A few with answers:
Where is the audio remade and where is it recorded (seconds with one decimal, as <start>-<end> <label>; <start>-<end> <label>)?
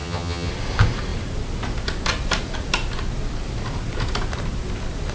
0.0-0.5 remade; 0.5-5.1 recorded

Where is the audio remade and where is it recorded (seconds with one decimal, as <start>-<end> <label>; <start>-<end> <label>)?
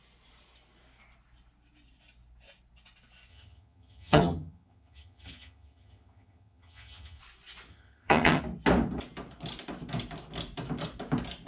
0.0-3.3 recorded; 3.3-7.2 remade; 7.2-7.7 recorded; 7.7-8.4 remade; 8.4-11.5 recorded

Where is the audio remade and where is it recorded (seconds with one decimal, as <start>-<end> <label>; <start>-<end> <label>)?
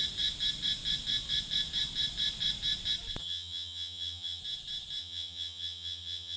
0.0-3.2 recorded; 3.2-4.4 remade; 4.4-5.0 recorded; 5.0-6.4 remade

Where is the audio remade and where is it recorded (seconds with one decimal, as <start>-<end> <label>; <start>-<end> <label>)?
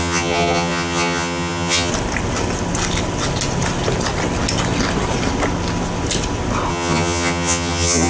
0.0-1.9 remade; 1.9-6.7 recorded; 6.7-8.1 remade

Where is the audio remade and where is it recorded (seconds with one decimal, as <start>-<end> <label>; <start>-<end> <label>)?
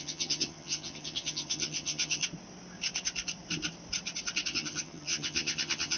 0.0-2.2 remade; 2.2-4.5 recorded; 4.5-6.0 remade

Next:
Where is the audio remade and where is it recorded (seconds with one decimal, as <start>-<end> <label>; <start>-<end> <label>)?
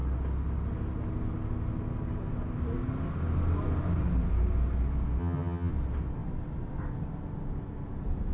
0.0-5.2 recorded; 5.2-5.7 remade; 5.7-8.3 recorded